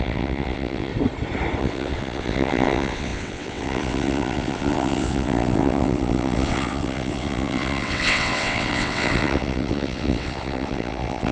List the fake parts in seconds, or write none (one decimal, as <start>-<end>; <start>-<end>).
0.0-0.9; 1.6-11.3

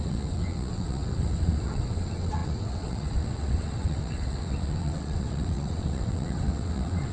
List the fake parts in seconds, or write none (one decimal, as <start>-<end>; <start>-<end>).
0.0-7.1

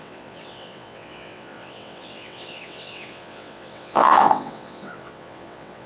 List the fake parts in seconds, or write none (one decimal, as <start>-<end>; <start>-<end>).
0.0-5.9

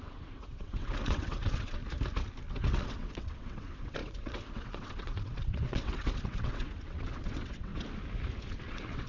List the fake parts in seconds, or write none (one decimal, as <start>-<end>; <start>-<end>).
0.0-1.8; 2.5-7.7; 8.6-9.1